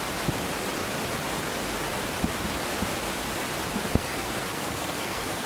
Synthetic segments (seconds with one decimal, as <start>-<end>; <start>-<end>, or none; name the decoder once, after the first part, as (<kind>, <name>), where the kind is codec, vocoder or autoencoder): 3.7-5.5 (codec, SNAC)